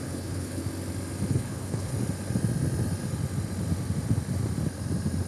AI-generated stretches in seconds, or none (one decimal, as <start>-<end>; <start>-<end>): 0.0-0.6; 1.3-1.9